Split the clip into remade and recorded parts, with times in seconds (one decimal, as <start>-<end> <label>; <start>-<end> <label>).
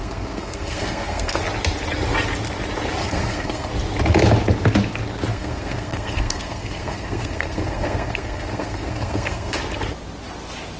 0.0-1.4 remade; 1.4-3.0 recorded; 3.0-3.7 remade; 3.7-5.3 recorded; 5.3-9.6 remade; 9.6-10.8 recorded